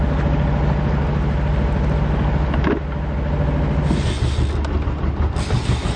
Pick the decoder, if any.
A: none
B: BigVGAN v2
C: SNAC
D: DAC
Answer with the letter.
A